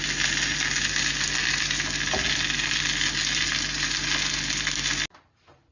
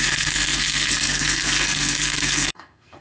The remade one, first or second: second